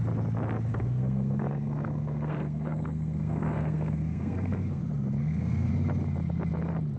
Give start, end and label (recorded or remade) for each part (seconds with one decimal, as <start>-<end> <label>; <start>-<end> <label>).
0.0-0.7 recorded; 0.7-4.8 remade; 4.8-5.2 recorded; 5.2-5.7 remade; 5.7-7.0 recorded